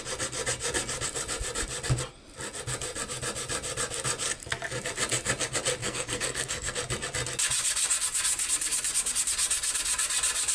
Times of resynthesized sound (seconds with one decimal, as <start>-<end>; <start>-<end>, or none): 5.8-6.8